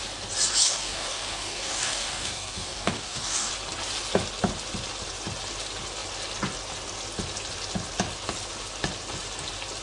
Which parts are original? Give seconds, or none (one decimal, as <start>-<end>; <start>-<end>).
0.0-0.6; 3.5-9.8